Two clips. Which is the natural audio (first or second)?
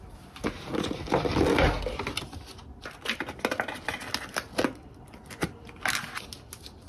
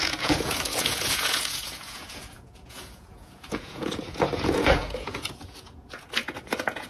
first